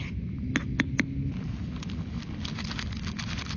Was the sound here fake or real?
real